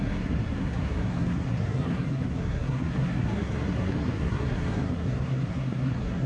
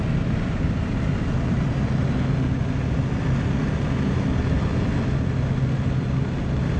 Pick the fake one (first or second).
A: first